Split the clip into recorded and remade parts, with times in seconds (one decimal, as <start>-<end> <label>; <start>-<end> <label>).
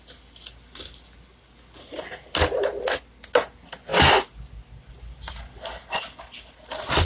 0.0-7.0 recorded